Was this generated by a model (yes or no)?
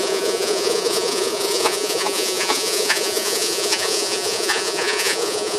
yes